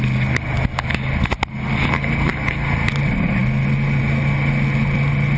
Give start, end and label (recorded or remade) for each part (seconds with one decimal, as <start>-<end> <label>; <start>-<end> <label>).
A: 0.0-5.4 recorded